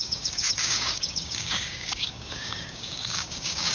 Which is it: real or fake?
fake